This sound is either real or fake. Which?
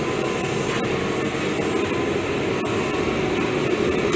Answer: real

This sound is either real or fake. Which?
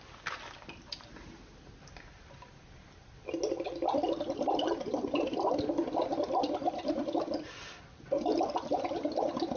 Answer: real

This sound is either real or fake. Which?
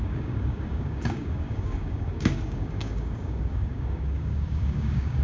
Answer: fake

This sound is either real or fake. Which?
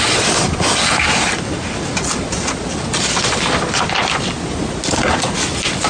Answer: real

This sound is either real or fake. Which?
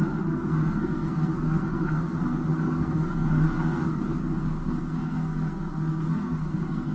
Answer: fake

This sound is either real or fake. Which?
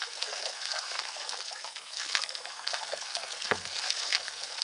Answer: fake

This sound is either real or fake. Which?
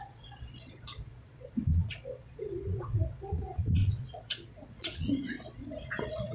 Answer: fake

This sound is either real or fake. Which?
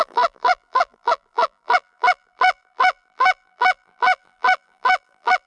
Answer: fake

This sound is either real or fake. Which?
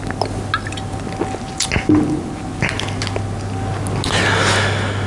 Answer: real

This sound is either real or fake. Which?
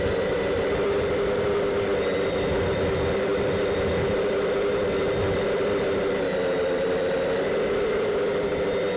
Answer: real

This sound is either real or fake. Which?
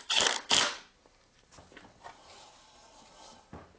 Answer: real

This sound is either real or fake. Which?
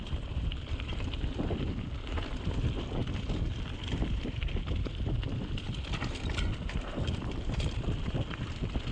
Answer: fake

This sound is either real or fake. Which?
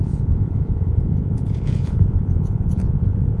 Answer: fake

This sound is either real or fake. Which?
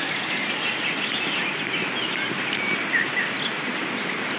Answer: real